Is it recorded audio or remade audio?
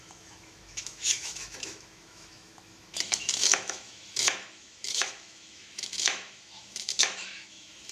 remade